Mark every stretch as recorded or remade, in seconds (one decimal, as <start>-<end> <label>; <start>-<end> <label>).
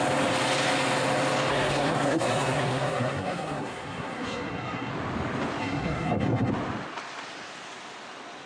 0.0-1.5 recorded; 1.5-4.9 remade; 4.9-5.6 recorded; 5.6-6.5 remade; 6.5-8.5 recorded